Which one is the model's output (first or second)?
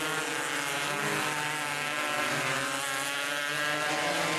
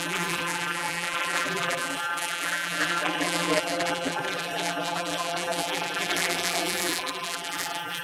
second